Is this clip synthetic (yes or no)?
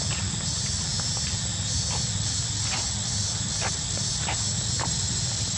no